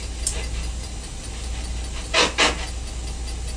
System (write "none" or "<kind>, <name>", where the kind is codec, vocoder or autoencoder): none